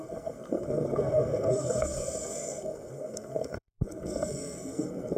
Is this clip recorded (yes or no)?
no